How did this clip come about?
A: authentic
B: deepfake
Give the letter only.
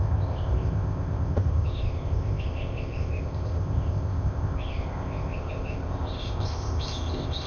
B